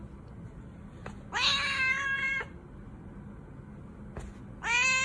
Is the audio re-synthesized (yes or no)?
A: no